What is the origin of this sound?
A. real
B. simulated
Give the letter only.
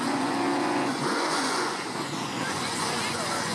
B